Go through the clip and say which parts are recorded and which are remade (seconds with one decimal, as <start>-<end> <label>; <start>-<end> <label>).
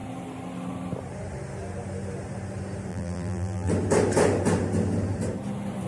0.0-2.9 recorded; 2.9-3.7 remade; 3.7-5.9 recorded